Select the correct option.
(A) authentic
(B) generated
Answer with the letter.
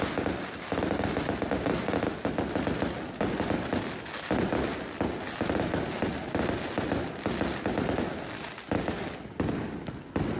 A